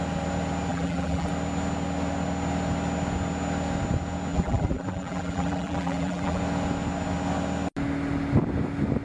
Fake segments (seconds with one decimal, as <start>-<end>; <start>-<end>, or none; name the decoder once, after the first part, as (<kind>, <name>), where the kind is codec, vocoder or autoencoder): 0.7-1.3 (vocoder, BigVGAN v2); 4.3-6.4